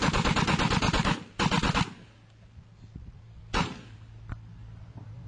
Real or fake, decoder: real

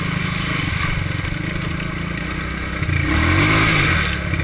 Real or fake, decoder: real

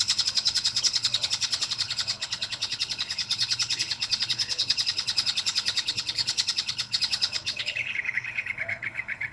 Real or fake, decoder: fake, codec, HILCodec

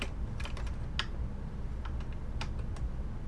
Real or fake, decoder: real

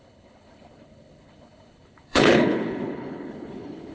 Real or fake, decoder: fake, codec, HILCodec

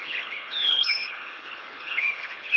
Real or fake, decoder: fake, codec, HILCodec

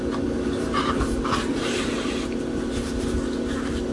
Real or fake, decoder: real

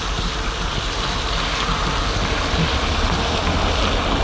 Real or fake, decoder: real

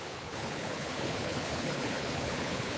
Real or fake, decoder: fake, codec, HILCodec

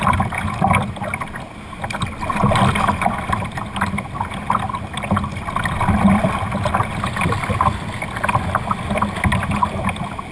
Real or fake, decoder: real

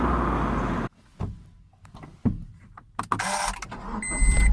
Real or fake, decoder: real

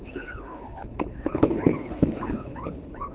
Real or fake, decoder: fake, codec, HILCodec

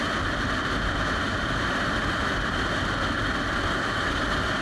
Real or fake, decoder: real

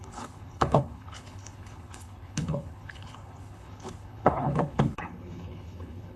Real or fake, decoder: fake, codec, HILCodec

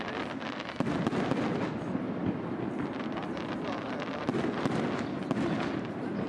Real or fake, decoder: real